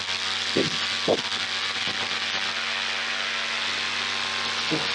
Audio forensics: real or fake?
real